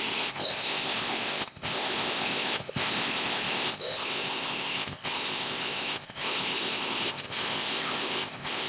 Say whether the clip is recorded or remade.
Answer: remade